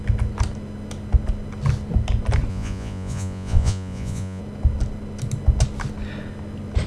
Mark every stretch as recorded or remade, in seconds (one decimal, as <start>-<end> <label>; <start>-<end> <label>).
0.0-2.5 recorded; 2.5-4.4 remade; 4.4-6.9 recorded

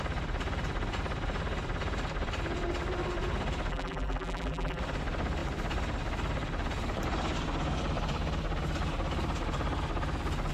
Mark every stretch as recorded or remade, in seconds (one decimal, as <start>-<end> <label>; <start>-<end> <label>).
0.0-3.7 recorded; 3.7-4.8 remade; 4.8-10.5 recorded

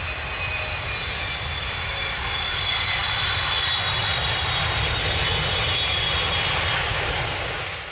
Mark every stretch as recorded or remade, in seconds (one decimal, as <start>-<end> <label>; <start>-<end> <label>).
0.0-7.9 recorded